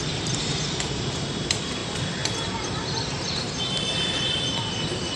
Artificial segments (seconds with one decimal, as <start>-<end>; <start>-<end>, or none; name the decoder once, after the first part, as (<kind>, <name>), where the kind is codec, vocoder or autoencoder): 0.0-5.2 (vocoder, BigVGAN v2)